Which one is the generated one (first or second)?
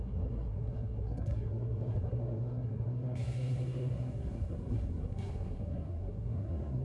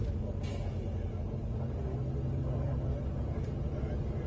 first